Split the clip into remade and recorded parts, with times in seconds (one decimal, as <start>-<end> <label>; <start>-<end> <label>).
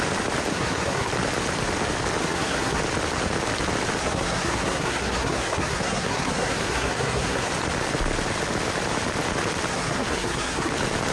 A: 0.0-0.5 recorded; 0.5-1.1 remade; 1.1-2.2 recorded; 2.2-2.8 remade; 2.8-4.0 recorded; 4.0-7.5 remade; 7.5-9.7 recorded; 9.7-10.7 remade; 10.7-11.1 recorded